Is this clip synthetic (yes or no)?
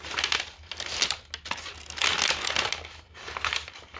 no